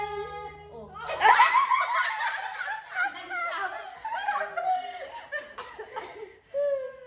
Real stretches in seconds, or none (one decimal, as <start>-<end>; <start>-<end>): 0.0-7.1